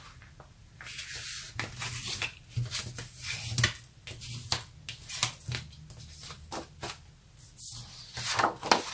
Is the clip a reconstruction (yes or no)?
no